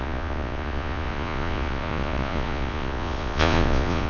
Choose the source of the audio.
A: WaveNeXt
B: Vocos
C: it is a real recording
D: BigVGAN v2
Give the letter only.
B